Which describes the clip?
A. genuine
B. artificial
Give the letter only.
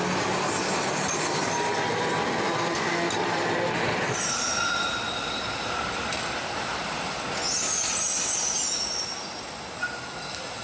A